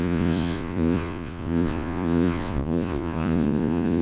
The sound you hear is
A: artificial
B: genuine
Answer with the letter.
A